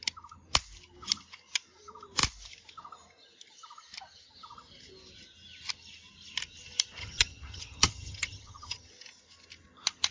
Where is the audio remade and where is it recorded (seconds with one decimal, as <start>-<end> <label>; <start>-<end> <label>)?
0.0-7.0 recorded; 7.0-8.9 remade; 8.9-10.1 recorded